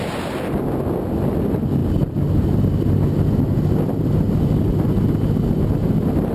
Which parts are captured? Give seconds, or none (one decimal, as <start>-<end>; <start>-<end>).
0.0-6.3